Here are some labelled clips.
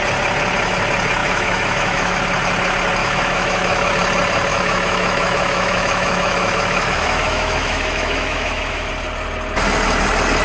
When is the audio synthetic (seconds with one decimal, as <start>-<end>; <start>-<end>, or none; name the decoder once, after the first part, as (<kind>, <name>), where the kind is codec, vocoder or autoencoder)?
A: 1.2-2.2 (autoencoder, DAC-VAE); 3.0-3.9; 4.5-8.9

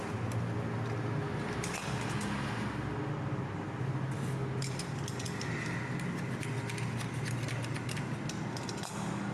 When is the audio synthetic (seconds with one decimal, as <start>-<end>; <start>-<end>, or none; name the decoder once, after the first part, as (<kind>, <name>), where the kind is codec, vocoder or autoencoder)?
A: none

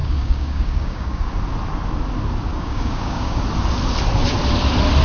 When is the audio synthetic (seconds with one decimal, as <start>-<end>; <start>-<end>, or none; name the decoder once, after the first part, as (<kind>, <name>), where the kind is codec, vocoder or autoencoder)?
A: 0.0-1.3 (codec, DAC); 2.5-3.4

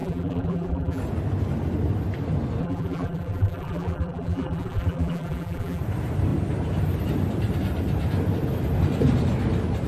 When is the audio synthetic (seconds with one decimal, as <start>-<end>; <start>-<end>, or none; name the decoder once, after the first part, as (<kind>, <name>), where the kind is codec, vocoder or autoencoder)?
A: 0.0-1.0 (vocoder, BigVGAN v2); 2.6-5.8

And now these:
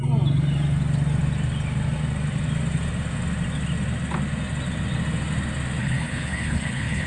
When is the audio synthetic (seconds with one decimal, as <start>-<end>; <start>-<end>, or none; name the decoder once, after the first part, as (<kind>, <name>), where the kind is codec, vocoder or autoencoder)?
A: 5.8-7.1 (codec, HILCodec)

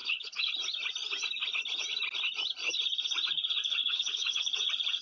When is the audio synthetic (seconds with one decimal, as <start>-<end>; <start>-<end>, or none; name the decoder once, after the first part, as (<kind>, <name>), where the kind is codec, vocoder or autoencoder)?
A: 0.0-0.5 (codec, HILCodec); 3.8-4.4

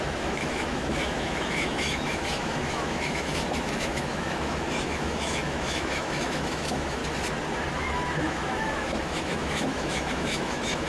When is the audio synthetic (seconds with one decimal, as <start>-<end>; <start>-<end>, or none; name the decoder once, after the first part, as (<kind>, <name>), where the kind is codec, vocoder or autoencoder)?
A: 0.0-7.0 (autoencoder, DAC-VAE); 7.9-10.9